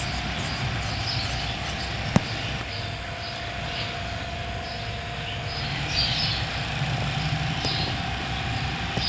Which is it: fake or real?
real